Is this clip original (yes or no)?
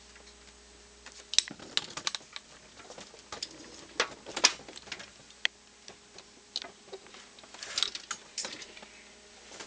yes